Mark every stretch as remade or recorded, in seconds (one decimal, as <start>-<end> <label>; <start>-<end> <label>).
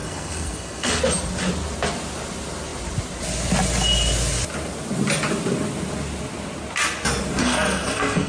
0.0-1.0 remade; 1.0-7.4 recorded; 7.4-8.3 remade